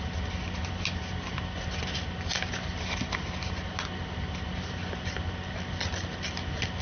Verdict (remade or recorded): recorded